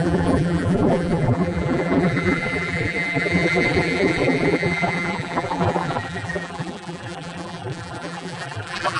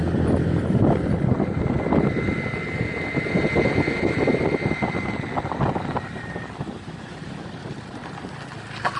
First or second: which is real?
second